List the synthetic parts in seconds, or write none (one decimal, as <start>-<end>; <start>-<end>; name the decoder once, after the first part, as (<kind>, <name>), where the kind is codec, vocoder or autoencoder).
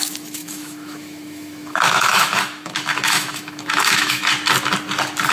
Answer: 0.0-4.2 (autoencoder, DAC-VAE)